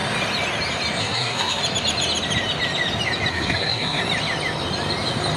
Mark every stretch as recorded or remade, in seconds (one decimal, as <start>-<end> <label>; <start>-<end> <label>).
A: 0.0-1.0 recorded; 1.0-1.6 remade; 1.6-3.3 recorded; 3.3-4.0 remade; 4.0-5.4 recorded